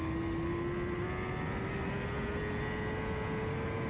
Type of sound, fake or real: real